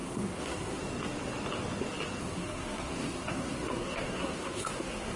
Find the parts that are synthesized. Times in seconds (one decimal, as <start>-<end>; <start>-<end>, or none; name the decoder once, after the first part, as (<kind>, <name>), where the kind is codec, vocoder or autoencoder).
0.0-0.8 (codec, SNAC); 2.2-5.2